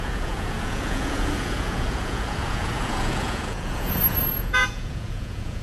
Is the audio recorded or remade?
remade